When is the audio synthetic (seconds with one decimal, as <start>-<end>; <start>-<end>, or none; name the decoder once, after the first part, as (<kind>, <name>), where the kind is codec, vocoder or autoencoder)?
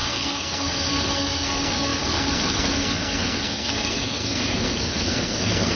0.0-5.8 (codec, SNAC)